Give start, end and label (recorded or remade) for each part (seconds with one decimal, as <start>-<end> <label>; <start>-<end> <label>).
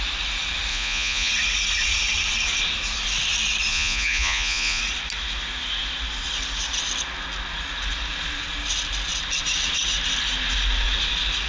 0.0-0.7 recorded; 0.7-1.3 remade; 1.3-3.7 recorded; 3.7-4.8 remade; 4.8-11.5 recorded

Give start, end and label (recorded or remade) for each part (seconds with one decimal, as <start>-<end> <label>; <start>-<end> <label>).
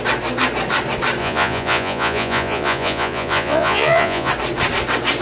0.0-1.2 recorded; 1.2-4.3 remade; 4.3-5.2 recorded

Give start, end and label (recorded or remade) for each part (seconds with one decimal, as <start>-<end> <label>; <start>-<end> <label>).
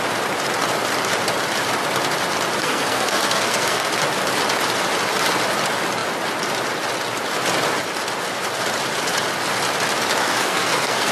0.0-2.6 recorded; 2.6-3.9 remade; 3.9-10.2 recorded; 10.2-11.1 remade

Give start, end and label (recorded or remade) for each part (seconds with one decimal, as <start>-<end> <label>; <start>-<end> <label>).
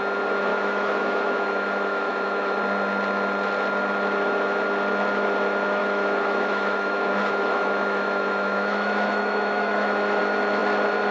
0.0-0.5 recorded; 0.5-2.6 remade; 2.6-5.8 recorded; 5.8-10.2 remade; 10.2-11.1 recorded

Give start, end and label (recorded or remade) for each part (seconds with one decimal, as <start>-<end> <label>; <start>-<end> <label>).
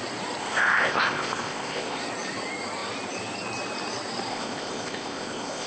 0.0-0.4 recorded; 0.4-2.0 remade; 2.0-4.3 recorded; 4.3-5.7 remade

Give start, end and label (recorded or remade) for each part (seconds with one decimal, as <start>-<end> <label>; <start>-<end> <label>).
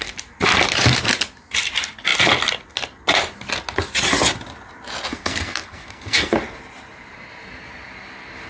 0.0-5.1 recorded; 5.1-6.3 remade; 6.3-8.5 recorded